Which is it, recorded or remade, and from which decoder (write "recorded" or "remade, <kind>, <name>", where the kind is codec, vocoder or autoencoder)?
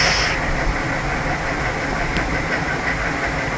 recorded